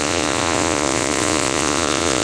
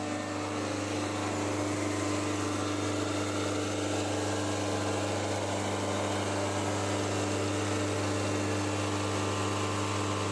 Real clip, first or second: second